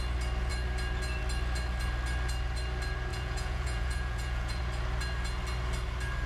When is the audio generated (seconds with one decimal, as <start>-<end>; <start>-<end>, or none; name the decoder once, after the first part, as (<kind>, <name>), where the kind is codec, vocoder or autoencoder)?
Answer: 3.1-4.6 (vocoder, Vocos)

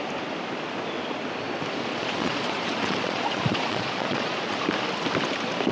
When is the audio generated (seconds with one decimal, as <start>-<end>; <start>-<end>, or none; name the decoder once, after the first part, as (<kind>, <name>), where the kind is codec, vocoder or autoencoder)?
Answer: 1.9-4.6 (vocoder, Vocos)

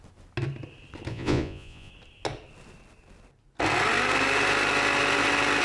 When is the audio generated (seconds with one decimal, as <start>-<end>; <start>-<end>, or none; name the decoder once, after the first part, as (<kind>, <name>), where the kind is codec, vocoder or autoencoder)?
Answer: 1.1-1.9 (vocoder, Vocos)

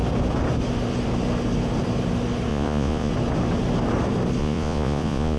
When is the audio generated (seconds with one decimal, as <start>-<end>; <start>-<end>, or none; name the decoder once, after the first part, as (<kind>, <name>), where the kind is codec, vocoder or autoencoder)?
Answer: 2.5-3.1 (vocoder, Vocos); 4.4-5.4